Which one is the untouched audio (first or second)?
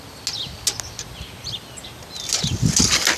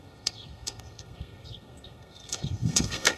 first